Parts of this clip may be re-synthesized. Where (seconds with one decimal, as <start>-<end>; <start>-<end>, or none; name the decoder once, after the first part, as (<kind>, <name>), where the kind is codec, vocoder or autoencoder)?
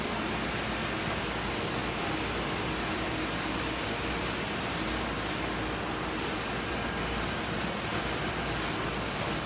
none